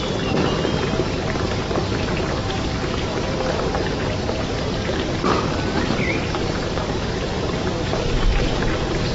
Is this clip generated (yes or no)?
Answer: no